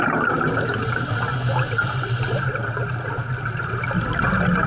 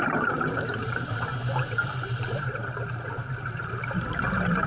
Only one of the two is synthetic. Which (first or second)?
second